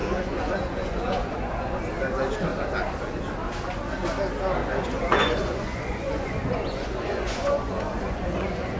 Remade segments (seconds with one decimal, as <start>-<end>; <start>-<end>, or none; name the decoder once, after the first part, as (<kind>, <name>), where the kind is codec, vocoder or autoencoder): 0.0-1.8 (vocoder, Vocos); 4.6-8.8